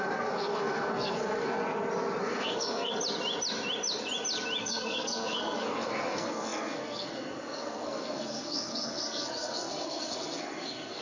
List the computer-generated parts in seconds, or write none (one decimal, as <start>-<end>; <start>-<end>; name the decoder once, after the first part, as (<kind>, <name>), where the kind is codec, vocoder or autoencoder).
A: 0.0-1.6 (codec, SNAC); 2.2-2.9; 4.6-11.0